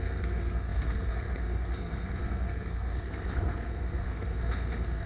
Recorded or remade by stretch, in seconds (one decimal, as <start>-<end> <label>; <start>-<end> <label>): 0.0-5.1 remade

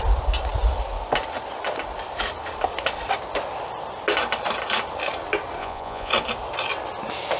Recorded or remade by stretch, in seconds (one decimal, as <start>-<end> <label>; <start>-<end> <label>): 0.0-5.6 recorded; 5.6-6.1 remade; 6.1-7.4 recorded

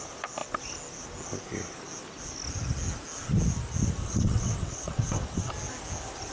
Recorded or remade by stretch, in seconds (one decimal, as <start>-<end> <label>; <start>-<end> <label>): 0.0-4.0 recorded; 4.0-5.5 remade; 5.5-6.3 recorded

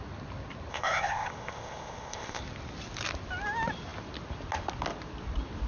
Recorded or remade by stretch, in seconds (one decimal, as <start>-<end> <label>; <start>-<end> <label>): 0.0-0.7 recorded; 0.7-2.4 remade; 2.4-5.7 recorded